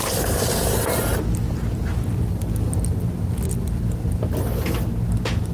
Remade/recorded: recorded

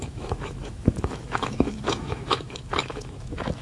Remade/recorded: remade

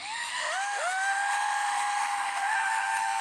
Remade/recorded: remade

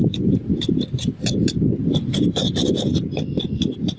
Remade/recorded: recorded